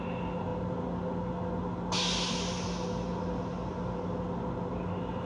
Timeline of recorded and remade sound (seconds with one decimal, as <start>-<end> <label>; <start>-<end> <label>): 0.0-5.3 recorded